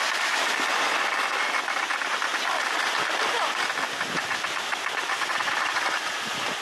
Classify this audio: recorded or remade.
recorded